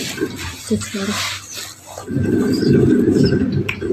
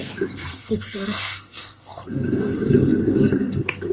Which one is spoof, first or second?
second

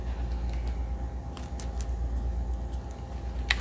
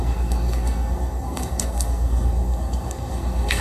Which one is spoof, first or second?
second